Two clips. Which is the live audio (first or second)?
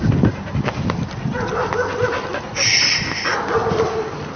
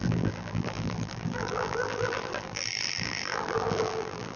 first